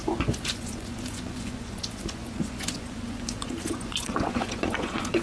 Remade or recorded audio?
remade